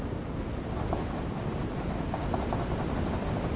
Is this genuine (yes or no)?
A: yes